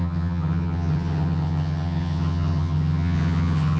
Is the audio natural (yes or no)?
no